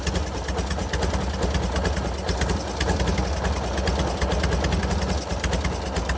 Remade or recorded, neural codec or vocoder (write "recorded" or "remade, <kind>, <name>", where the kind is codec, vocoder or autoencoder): recorded